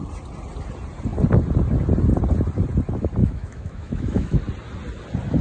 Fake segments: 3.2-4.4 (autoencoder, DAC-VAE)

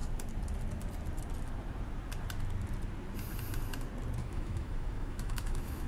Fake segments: 4.2-5.9 (autoencoder, DAC-VAE)

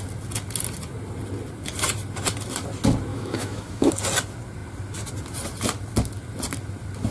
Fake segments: 3.1-3.9 (autoencoder, DAC-VAE)

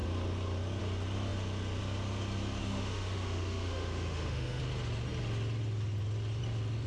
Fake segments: 2.6-4.6 (autoencoder, DAC-VAE)

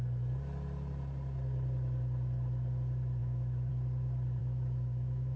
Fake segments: 3.2-3.7 (autoencoder, DAC-VAE); 4.4-5.4

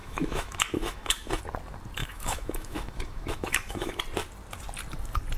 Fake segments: 0.0-1.4 (autoencoder, DAC-VAE); 2.0-4.0

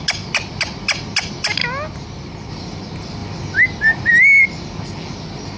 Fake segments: none

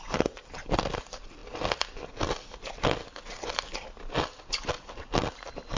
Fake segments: none